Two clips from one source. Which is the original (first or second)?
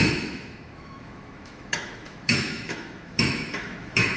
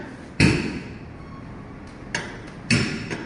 second